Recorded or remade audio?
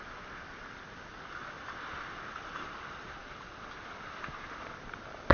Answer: recorded